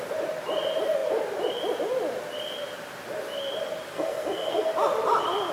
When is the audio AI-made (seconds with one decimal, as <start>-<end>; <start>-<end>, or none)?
3.9-4.7